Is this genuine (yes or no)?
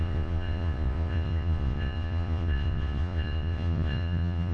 no